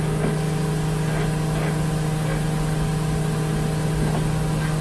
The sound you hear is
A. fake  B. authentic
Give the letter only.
B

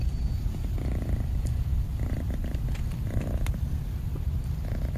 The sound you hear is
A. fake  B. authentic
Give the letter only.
B